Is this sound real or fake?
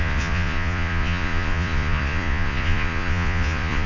fake